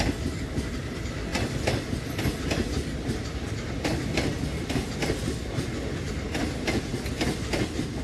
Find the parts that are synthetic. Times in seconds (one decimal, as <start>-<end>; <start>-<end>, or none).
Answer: none